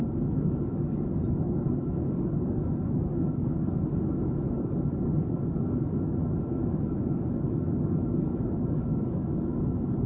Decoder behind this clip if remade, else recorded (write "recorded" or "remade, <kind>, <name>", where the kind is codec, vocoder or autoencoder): remade, codec, DAC